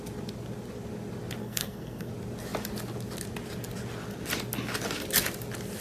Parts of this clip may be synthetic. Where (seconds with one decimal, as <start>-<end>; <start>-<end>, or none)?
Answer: 1.4-2.1